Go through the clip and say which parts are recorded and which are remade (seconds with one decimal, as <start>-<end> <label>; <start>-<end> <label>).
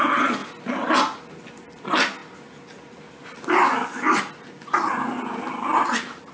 0.0-6.3 recorded